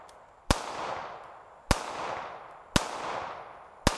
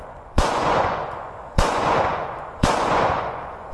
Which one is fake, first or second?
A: second